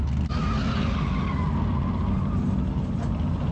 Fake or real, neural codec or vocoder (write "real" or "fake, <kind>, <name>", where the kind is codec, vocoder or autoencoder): real